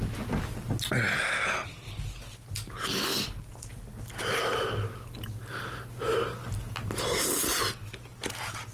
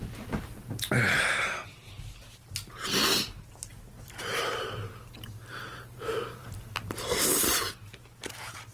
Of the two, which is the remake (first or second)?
second